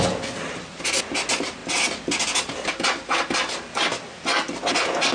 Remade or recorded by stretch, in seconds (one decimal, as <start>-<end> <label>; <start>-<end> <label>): 0.0-5.1 recorded